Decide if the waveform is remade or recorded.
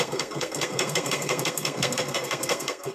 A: remade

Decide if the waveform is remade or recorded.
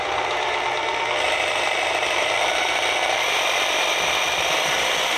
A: recorded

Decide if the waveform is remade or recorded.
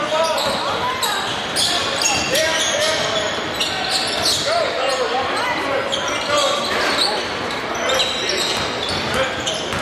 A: recorded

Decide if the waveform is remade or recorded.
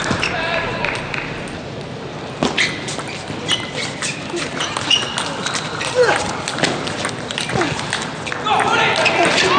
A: recorded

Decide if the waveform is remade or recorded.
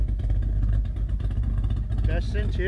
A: recorded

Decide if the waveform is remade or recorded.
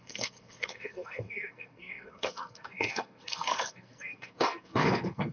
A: remade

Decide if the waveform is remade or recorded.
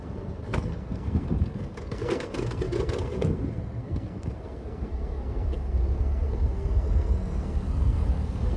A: remade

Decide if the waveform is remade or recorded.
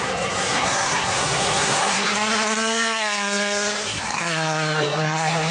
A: remade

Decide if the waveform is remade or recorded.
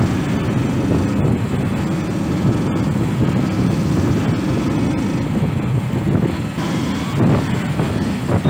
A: recorded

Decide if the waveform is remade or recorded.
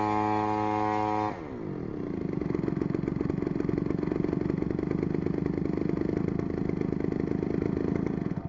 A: recorded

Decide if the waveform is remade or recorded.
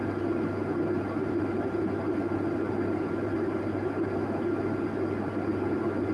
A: recorded